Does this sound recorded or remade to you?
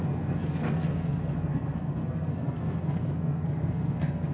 remade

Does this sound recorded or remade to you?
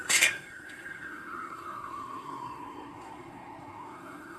remade